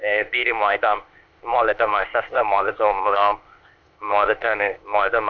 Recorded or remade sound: remade